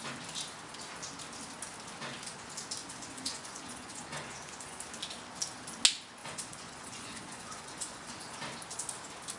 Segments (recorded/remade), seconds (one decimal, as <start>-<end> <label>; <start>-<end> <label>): 0.0-2.8 recorded; 2.8-4.8 remade; 4.8-6.2 recorded; 6.2-8.4 remade; 8.4-9.4 recorded